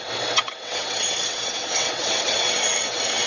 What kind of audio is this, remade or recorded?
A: remade